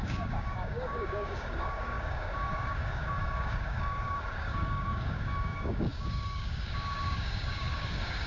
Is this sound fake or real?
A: fake